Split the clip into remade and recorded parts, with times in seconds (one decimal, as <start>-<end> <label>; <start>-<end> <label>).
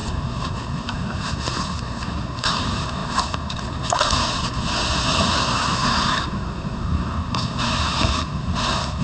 0.0-9.0 remade